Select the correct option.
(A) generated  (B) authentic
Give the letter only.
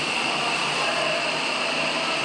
A